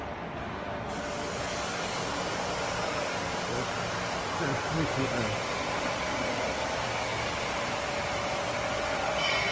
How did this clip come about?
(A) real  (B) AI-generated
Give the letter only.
A